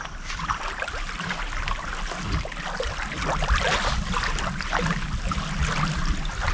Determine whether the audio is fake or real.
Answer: real